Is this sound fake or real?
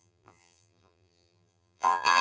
fake